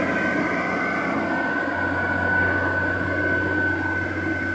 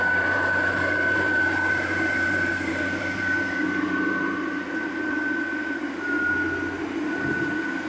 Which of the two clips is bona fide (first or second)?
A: first